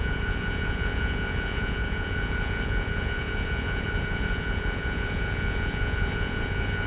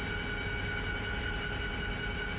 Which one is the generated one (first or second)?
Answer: first